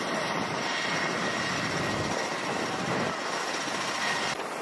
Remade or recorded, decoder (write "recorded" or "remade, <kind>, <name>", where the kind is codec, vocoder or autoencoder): recorded